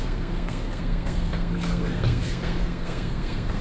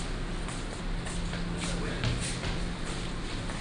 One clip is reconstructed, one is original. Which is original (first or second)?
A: second